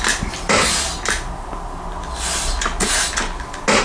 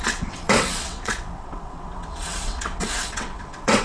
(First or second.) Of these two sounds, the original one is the first